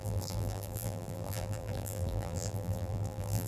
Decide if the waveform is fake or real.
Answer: fake